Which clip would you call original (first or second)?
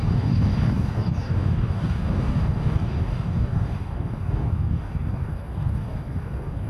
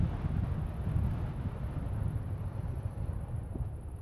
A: second